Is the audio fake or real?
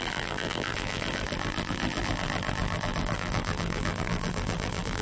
fake